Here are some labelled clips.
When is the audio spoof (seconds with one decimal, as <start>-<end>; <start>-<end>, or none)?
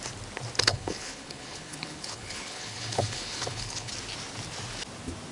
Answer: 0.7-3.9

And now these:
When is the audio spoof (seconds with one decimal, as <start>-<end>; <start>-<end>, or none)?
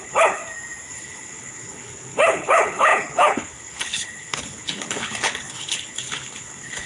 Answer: 0.0-0.4; 0.9-6.9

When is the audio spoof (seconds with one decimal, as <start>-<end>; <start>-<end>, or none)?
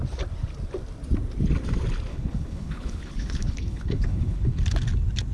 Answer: 2.1-4.6